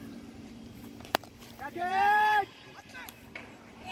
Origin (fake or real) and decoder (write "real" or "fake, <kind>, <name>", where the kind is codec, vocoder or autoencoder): fake, vocoder, BigVGAN v2